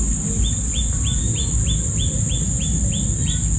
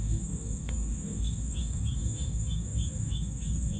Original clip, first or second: first